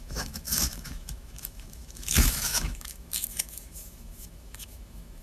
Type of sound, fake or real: fake